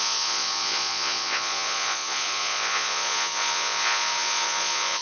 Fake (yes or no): yes